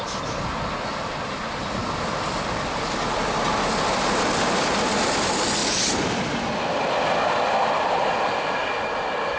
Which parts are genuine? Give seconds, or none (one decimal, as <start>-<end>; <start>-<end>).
0.0-3.2; 4.7-9.4